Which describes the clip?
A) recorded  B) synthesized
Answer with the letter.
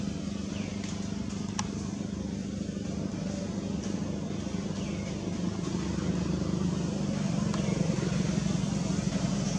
A